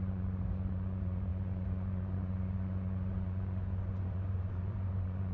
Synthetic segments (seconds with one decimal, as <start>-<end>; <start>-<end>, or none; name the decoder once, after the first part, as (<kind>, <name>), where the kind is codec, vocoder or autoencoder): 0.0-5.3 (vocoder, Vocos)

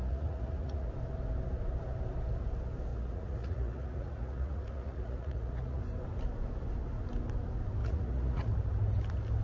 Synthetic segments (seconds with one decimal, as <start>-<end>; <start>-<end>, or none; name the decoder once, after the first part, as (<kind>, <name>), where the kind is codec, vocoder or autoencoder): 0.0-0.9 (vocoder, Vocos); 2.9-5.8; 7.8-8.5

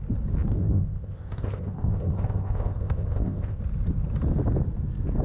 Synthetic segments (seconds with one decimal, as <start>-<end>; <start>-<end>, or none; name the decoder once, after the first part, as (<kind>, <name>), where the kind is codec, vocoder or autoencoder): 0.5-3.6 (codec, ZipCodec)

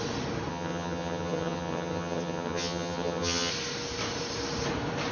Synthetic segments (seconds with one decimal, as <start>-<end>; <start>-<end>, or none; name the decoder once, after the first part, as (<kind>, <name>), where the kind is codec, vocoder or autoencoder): 0.5-3.5 (vocoder, HiFi-GAN)

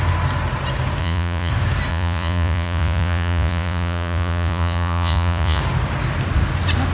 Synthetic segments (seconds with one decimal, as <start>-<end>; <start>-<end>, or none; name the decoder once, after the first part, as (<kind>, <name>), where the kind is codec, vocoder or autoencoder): 1.0-1.5 (vocoder, Vocos); 1.9-5.6

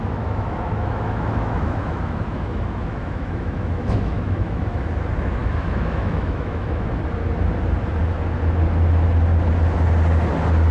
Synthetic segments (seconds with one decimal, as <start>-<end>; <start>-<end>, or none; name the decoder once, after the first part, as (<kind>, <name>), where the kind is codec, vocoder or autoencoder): 0.0-4.9 (autoencoder, DAC-VAE); 5.4-7.0

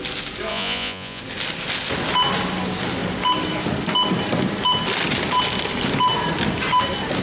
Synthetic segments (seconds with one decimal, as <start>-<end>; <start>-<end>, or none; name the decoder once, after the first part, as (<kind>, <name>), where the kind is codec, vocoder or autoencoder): 0.5-1.2 (vocoder, Vocos)